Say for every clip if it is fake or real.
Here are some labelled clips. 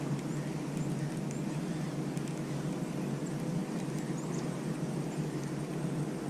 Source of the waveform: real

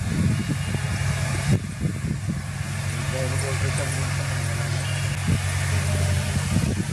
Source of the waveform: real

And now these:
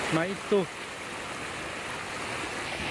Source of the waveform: real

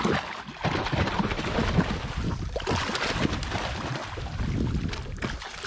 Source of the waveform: real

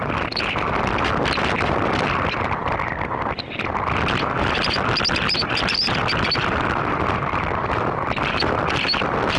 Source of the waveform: real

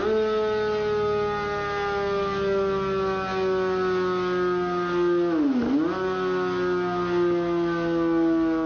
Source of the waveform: real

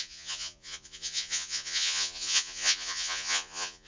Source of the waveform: fake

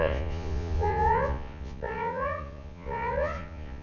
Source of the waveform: fake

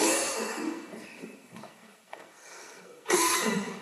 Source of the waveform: fake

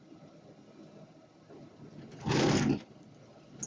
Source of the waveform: real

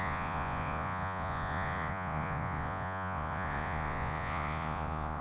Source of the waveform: fake